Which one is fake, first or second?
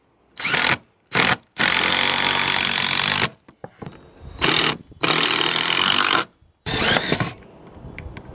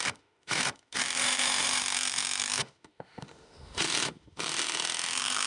second